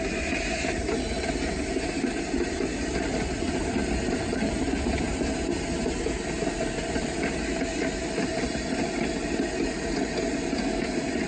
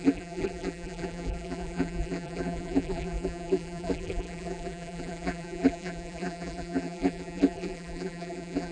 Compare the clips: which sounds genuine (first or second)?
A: first